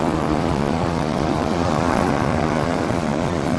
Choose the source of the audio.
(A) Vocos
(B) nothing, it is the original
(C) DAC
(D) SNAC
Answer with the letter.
A